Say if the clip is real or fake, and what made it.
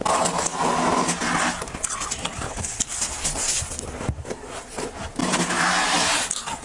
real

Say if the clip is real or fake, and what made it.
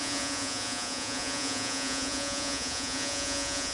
fake, vocoder, Vocos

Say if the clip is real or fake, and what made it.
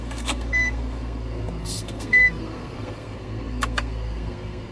fake, codec, SNAC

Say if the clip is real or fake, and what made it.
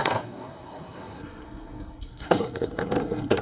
fake, codec, SNAC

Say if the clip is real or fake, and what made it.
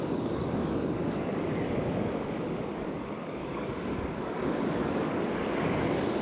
fake, codec, DAC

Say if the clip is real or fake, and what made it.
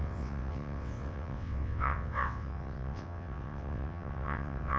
fake, vocoder, WaveNeXt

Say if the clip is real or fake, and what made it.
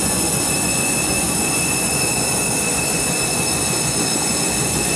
fake, vocoder, Vocos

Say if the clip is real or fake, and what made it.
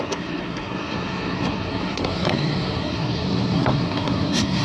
fake, codec, SNAC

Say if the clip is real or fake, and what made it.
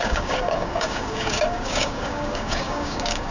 fake, codec, DAC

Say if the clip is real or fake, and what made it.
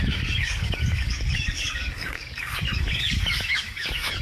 fake, codec, DAC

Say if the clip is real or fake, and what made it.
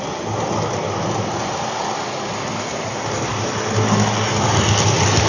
real